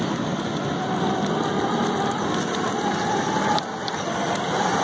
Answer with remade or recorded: recorded